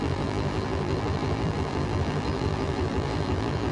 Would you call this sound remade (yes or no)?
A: yes